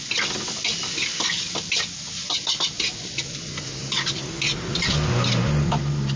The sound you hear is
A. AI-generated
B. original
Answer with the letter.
B